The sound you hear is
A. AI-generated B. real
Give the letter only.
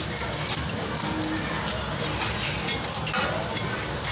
B